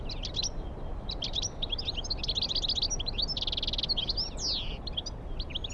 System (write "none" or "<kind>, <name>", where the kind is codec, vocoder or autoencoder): none